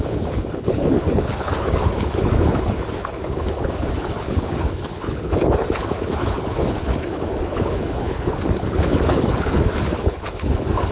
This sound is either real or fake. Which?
fake